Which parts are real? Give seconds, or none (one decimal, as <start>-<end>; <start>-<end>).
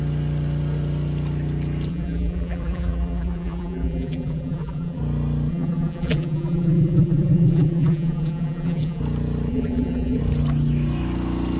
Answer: 0.0-1.9; 5.0-5.5; 9.0-9.5; 10.2-11.6